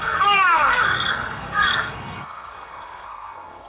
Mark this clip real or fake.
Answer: fake